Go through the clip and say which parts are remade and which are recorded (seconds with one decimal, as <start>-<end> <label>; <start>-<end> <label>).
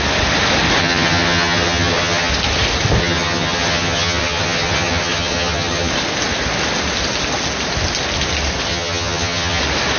0.0-0.8 recorded; 0.8-2.3 remade; 2.3-3.0 recorded; 3.0-5.9 remade; 5.9-8.7 recorded; 8.7-9.6 remade; 9.6-10.0 recorded